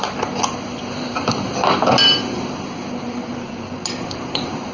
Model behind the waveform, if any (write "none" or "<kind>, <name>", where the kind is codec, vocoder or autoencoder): none